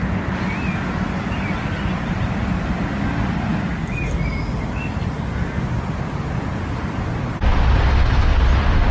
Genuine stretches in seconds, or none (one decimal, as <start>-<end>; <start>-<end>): 0.0-8.9